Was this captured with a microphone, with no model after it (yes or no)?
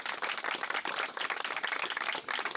yes